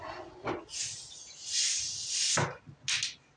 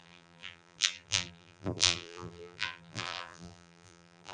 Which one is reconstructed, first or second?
second